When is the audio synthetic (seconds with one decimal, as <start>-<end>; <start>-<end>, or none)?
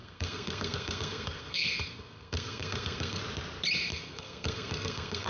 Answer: 0.0-3.2; 3.9-5.3